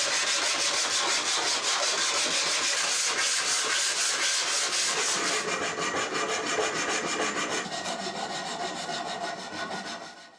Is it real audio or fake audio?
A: real